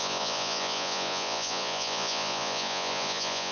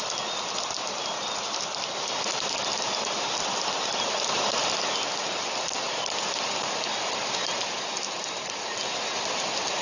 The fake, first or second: first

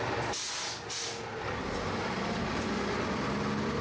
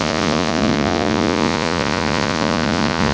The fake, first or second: second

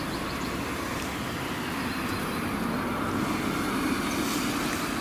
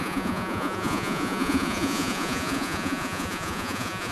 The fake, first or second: second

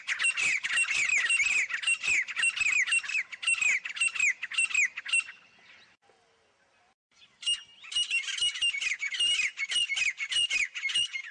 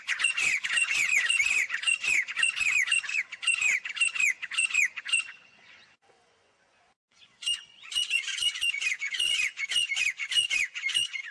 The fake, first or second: second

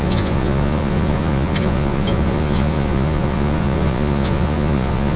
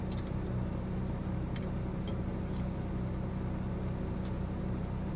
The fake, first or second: first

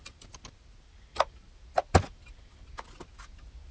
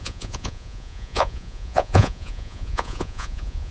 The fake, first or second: second